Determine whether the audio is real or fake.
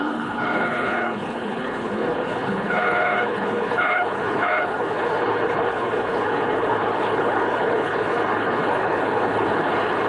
fake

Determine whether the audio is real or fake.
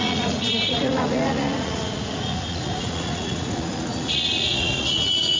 fake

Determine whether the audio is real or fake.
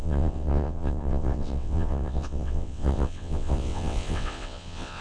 fake